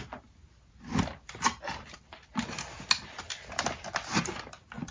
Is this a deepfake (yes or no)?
no